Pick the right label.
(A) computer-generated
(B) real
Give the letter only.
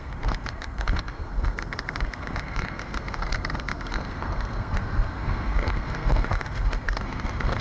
A